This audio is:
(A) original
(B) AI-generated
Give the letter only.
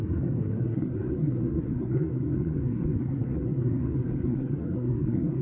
B